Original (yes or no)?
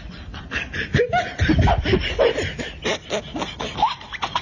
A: no